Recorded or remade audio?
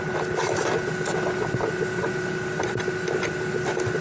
recorded